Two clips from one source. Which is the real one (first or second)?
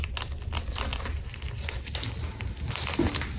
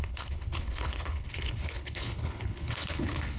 first